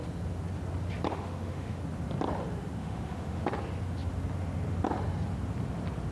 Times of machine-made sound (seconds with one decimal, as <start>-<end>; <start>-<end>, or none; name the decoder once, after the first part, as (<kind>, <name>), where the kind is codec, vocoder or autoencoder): 1.1-1.8 (autoencoder, DAC-VAE); 2.8-3.4